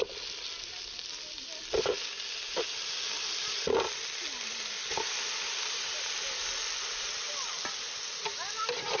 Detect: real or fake real